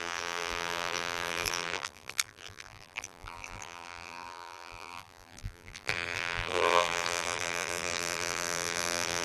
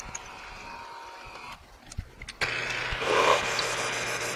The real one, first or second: second